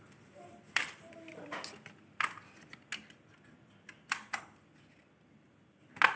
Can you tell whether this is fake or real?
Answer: real